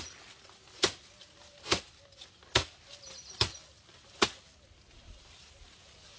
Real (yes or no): yes